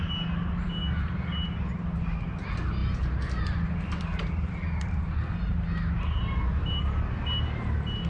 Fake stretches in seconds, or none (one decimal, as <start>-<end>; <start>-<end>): none